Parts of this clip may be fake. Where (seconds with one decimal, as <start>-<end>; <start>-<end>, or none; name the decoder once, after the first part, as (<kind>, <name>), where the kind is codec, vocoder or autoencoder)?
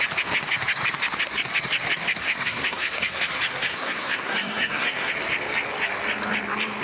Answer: 2.2-3.2 (codec, SNAC); 3.7-5.1